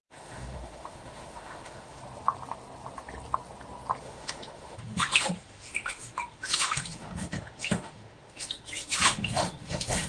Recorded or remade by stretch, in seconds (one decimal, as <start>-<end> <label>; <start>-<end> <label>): 0.0-2.0 remade; 2.0-4.0 recorded; 4.0-10.1 remade